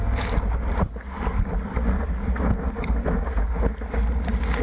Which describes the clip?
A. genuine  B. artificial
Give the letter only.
A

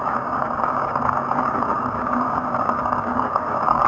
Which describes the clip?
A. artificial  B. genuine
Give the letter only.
A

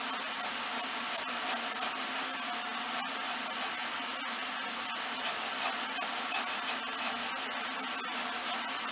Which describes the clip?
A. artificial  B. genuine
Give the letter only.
B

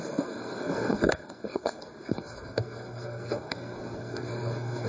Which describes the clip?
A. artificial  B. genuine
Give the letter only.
A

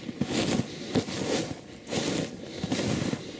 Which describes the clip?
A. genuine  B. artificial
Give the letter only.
A